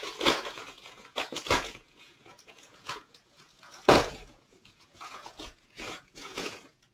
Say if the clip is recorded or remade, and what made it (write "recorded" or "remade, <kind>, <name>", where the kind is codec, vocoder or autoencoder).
remade, vocoder, Vocos